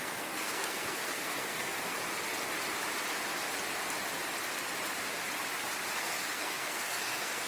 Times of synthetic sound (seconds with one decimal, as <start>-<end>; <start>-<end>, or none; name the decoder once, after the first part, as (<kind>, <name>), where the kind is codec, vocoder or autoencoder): 0.0-2.0 (codec, SNAC); 6.0-7.5